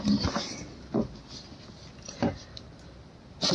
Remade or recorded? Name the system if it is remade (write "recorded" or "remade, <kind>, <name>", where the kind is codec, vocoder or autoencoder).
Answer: recorded